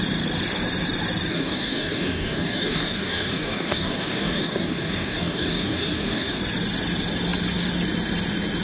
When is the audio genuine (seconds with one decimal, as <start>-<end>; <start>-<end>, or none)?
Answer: 0.0-1.3; 6.4-8.6

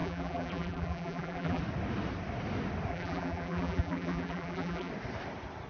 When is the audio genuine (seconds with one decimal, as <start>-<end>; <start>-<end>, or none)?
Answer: 1.6-2.9; 4.9-5.7

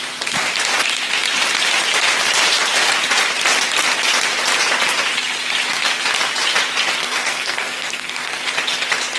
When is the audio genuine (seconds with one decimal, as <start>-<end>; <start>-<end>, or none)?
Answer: 0.0-7.0; 8.4-9.2

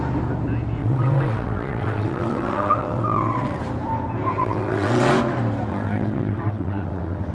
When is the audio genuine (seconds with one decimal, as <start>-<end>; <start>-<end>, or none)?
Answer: 0.0-0.8; 3.6-4.4; 5.1-5.7

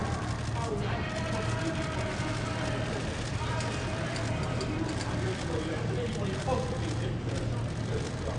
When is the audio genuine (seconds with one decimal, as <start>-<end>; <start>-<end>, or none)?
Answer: 0.0-8.4